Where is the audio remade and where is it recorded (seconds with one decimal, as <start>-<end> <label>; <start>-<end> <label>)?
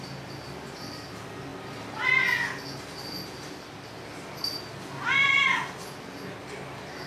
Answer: 0.0-7.1 recorded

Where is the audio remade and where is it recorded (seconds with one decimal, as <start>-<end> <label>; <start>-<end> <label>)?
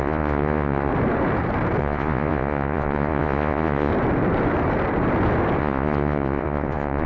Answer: 0.0-0.9 remade; 0.9-1.8 recorded; 1.8-3.9 remade; 3.9-5.6 recorded; 5.6-7.1 remade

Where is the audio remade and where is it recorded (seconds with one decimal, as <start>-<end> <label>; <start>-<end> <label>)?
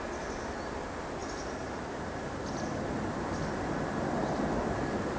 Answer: 0.0-5.2 recorded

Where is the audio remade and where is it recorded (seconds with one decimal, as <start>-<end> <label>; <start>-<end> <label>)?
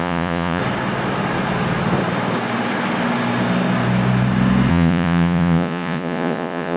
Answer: 0.0-0.6 remade; 0.6-4.7 recorded; 4.7-6.8 remade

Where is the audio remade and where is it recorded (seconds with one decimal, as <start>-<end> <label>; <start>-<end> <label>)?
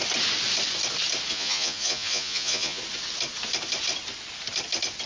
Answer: 0.0-1.3 recorded; 1.3-2.8 remade; 2.8-5.1 recorded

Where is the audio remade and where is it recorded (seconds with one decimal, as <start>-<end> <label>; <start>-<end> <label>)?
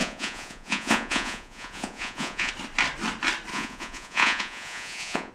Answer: 0.0-2.5 remade; 2.5-3.5 recorded; 3.5-5.3 remade